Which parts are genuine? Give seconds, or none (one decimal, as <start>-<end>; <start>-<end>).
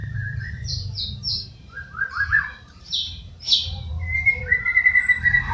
none